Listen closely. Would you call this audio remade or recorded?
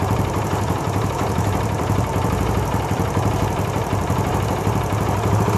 remade